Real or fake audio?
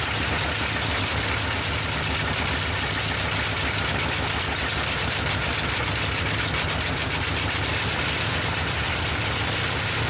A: real